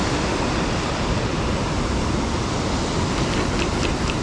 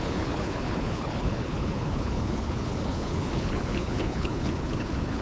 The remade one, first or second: second